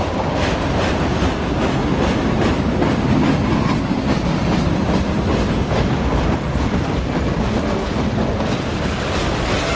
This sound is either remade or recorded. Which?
recorded